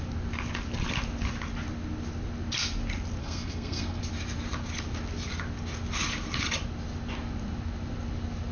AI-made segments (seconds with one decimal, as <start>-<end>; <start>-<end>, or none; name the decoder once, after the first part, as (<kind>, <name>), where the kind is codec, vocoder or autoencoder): 3.2-4.0 (codec, SNAC)